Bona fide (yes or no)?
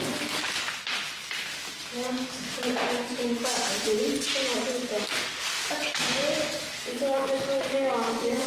yes